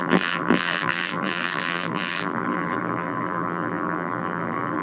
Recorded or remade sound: remade